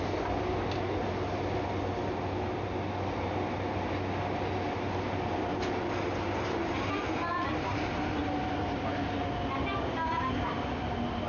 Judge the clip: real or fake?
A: real